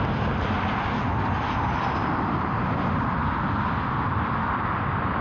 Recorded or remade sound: recorded